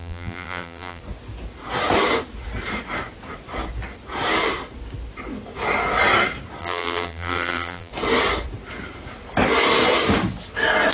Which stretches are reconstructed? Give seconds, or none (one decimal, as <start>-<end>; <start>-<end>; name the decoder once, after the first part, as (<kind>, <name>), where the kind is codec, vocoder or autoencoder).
0.0-1.0 (vocoder, BigVGAN v2); 6.6-7.9